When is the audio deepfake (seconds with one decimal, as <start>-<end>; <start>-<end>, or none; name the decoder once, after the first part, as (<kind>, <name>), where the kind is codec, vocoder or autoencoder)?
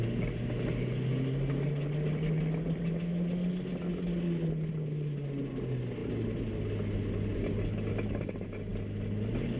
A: none